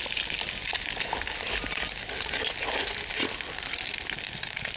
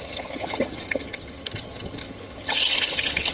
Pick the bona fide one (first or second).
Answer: first